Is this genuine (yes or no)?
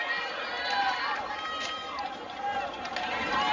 yes